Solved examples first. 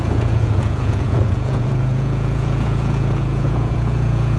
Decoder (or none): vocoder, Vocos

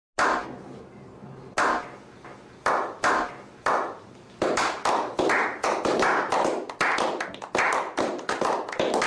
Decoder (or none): none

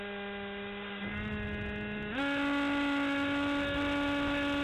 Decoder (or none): none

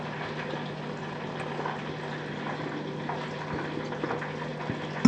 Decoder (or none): none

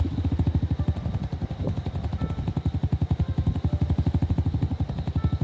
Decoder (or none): none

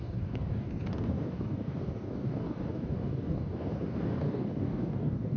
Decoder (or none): codec, DAC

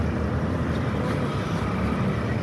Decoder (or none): none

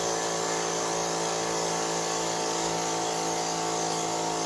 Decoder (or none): codec, DAC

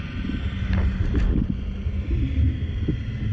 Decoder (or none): none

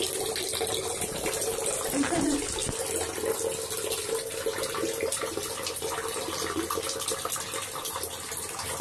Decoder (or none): none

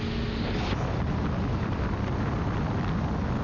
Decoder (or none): none